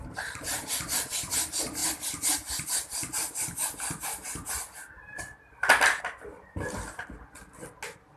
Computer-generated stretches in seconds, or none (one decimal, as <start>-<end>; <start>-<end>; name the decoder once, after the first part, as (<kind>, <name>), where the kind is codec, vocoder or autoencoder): none